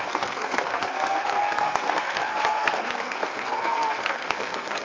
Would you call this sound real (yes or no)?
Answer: no